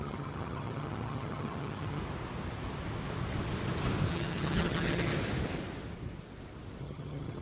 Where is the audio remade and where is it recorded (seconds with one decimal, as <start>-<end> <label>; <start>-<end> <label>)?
0.0-2.0 remade; 2.0-4.1 recorded; 4.1-5.1 remade; 5.1-6.8 recorded; 6.8-7.4 remade

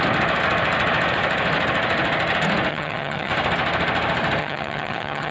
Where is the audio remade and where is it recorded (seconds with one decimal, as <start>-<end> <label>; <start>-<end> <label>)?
0.0-2.7 recorded; 2.7-3.3 remade; 3.3-4.4 recorded; 4.4-5.3 remade

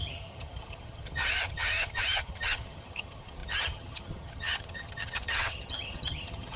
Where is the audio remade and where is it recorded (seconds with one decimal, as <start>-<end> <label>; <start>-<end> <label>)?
0.0-6.6 remade

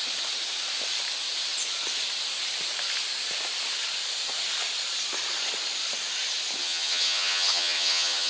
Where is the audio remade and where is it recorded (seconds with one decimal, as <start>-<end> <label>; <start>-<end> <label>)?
0.0-6.6 recorded; 6.6-8.3 remade

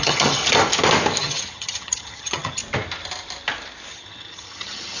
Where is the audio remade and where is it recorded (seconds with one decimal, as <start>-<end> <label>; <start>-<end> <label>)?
0.0-0.4 remade; 0.4-1.2 recorded; 1.2-2.6 remade; 2.6-3.9 recorded; 3.9-5.0 remade

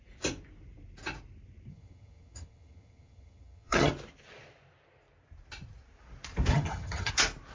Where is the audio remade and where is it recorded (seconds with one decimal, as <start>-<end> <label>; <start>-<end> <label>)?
0.0-1.7 recorded; 1.7-3.9 remade; 3.9-6.5 recorded; 6.5-7.1 remade; 7.1-7.5 recorded

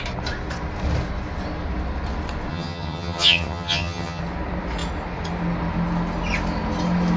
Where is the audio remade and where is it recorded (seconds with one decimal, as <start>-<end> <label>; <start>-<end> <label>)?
0.0-2.5 recorded; 2.5-4.2 remade; 4.2-7.2 recorded

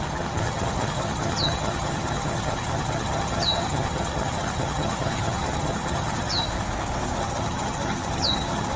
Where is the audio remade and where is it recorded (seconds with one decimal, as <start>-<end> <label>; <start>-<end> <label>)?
0.0-6.4 remade; 6.4-7.2 recorded; 7.2-8.8 remade